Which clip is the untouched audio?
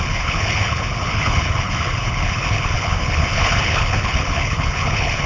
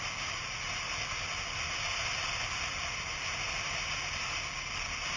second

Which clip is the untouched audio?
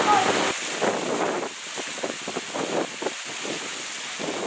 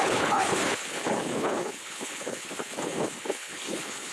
first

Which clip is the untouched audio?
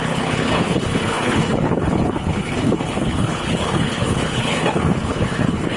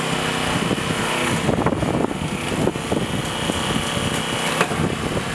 second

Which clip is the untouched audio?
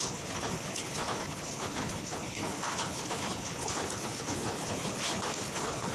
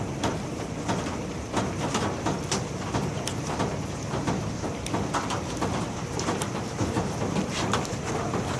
second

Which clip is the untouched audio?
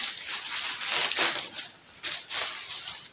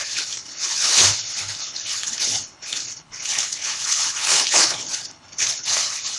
first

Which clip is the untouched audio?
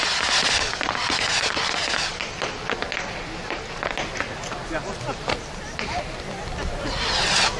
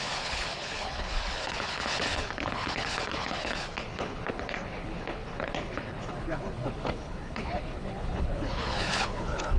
first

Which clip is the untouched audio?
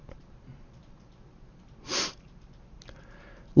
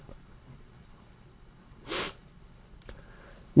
first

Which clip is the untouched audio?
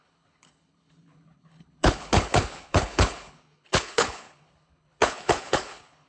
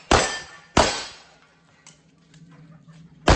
second